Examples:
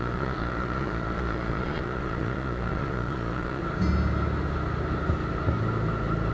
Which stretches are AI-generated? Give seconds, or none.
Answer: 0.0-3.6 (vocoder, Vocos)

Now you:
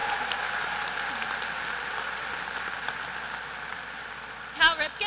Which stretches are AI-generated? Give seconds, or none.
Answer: none

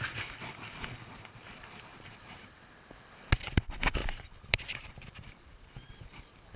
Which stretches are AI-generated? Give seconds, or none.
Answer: 1.9-2.6 (vocoder, BigVGAN v2); 4.0-5.9

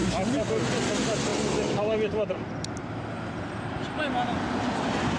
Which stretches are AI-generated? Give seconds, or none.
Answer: 0.0-0.5 (vocoder, BigVGAN v2)

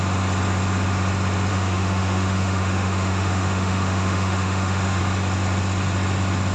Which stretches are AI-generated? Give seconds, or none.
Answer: 1.5-5.0 (autoencoder, DAC-VAE)

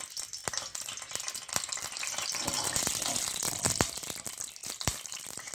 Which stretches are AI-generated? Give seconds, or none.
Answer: 4.6-5.5 (vocoder, BigVGAN v2)

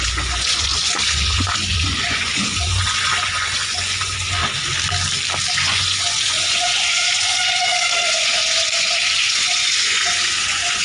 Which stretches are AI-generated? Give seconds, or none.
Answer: 0.0-4.4 (vocoder, Vocos); 5.5-10.8